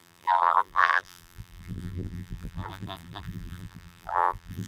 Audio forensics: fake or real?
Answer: fake